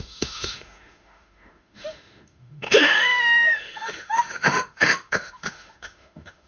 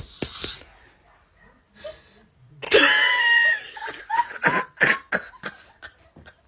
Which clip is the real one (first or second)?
second